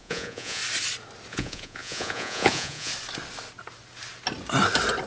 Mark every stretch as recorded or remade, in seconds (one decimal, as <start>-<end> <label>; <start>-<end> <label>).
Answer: 0.0-0.6 remade; 0.6-1.3 recorded; 1.3-2.9 remade; 2.9-5.1 recorded